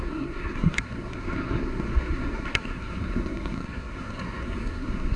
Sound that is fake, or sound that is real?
fake